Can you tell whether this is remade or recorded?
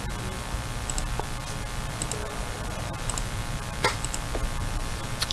recorded